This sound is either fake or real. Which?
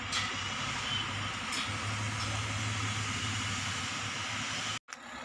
real